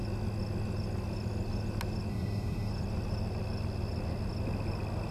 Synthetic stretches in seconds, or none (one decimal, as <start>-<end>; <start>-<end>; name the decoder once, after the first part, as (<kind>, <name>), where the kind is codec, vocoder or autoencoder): 2.1-2.7 (autoencoder, DAC-VAE)